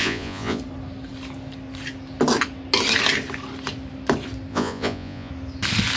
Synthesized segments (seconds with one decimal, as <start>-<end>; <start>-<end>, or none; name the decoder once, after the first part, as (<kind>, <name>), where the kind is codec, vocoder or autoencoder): 0.0-0.6 (vocoder, Vocos); 4.5-5.3